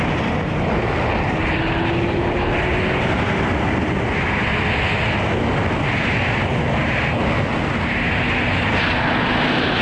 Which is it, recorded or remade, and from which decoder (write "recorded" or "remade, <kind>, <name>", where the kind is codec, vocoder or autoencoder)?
recorded